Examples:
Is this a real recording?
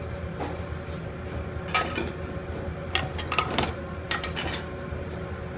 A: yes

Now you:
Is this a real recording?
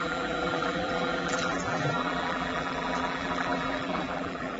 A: no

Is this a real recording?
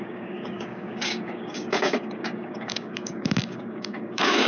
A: no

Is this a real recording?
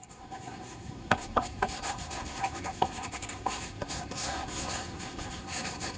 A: no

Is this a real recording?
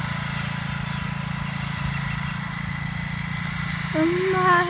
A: yes